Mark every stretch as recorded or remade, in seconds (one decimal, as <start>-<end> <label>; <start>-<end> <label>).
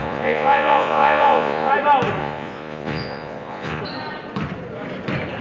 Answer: 0.0-1.7 remade; 1.7-2.2 recorded; 2.2-3.8 remade; 3.8-5.4 recorded